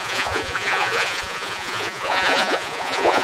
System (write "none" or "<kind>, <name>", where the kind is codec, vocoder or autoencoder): vocoder, Vocos